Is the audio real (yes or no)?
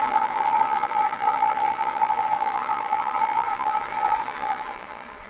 no